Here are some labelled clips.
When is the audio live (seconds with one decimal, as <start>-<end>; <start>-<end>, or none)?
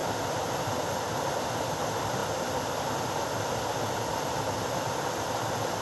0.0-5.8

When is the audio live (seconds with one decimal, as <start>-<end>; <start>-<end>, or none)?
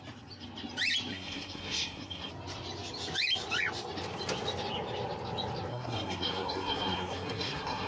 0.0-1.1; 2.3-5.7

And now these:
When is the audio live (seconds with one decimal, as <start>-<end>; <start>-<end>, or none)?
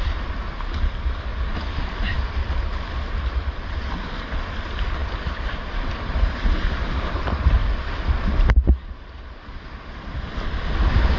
0.0-5.0; 7.0-11.2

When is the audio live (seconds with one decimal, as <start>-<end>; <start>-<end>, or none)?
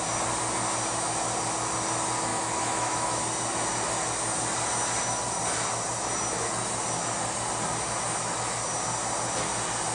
0.0-2.3; 3.2-9.9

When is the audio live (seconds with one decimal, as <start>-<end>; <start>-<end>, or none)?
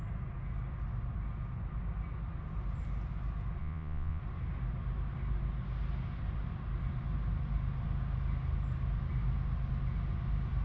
0.0-3.6; 4.2-10.6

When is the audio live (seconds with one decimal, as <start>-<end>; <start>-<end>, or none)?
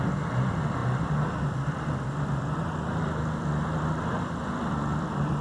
none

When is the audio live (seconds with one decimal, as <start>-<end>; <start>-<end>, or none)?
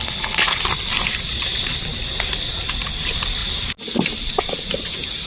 0.6-5.3